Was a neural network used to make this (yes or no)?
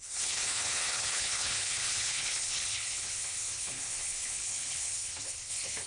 yes